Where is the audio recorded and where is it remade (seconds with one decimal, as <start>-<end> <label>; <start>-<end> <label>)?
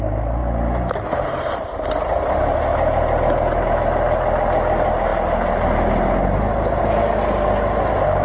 0.0-8.2 recorded